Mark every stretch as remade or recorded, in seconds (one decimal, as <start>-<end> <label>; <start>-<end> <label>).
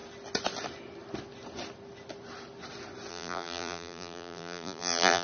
0.0-3.1 recorded; 3.1-5.2 remade